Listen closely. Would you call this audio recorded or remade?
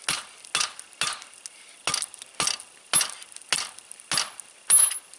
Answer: recorded